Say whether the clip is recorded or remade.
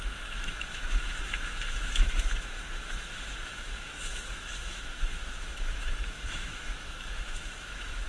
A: remade